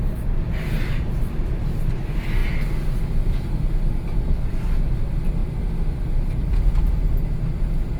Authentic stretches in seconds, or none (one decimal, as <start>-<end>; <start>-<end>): 0.0-8.0